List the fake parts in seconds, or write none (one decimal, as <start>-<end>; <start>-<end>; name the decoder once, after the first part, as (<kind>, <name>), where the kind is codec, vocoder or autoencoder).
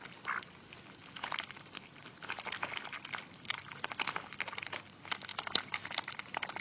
none